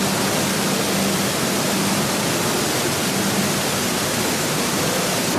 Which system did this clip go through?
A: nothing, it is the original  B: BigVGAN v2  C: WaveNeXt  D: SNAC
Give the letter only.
A